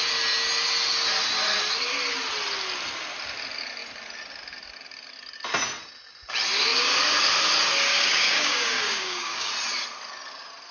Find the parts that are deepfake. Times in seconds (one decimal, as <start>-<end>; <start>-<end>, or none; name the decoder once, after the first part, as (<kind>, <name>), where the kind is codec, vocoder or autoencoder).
7.9-9.5 (codec, DAC)